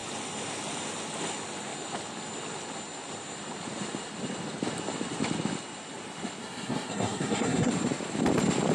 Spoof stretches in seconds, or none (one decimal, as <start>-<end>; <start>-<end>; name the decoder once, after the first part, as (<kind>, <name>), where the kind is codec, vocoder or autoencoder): 6.4-7.7 (codec, SNAC)